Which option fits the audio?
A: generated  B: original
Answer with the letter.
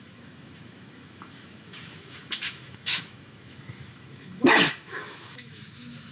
A